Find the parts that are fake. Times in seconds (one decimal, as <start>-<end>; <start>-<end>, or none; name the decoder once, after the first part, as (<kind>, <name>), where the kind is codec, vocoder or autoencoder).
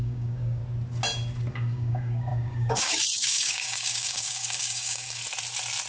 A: 0.0-0.6 (codec, DAC); 1.5-5.2